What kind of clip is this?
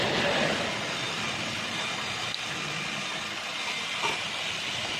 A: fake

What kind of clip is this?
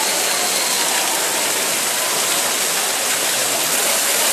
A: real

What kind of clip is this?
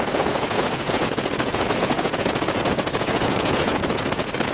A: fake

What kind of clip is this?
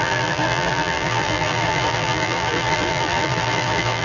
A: fake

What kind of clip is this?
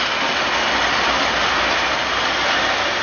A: real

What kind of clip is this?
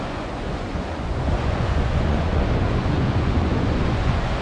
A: fake